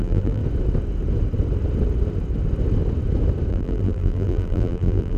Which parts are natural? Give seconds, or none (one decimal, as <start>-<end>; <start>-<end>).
0.4-3.5